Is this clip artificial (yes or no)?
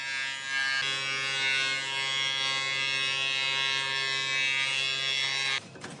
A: no